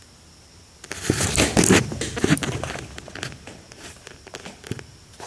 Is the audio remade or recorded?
recorded